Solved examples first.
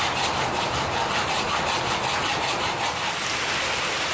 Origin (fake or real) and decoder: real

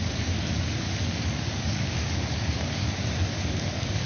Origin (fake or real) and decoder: fake, codec, DAC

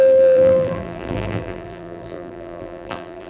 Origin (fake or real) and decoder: fake, vocoder, BigVGAN v2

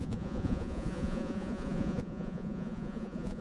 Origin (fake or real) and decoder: fake, vocoder, Vocos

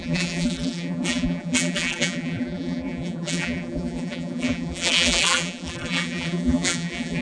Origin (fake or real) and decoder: fake, vocoder, BigVGAN v2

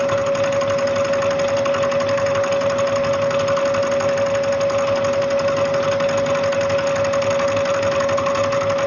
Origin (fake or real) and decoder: real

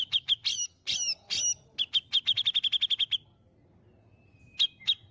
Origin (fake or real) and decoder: real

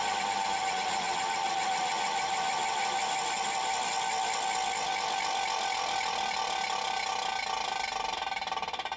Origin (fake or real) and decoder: real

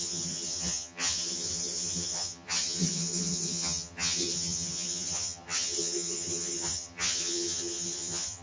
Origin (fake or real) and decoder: fake, vocoder, HiFi-GAN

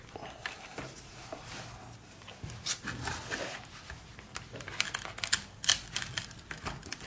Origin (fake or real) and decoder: real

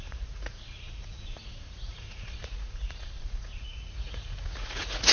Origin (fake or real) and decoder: fake, vocoder, Vocos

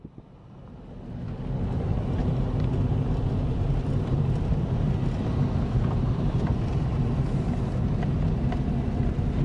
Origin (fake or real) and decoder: real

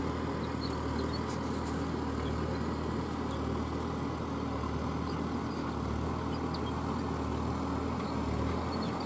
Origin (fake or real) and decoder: real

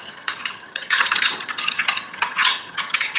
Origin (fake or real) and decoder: fake, vocoder, HiFi-GAN